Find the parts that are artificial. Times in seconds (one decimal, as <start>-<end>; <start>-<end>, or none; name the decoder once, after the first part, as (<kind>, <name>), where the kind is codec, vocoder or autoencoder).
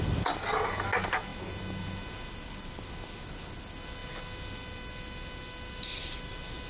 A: none